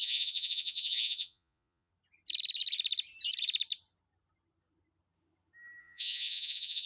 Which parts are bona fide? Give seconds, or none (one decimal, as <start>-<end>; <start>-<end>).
1.9-5.8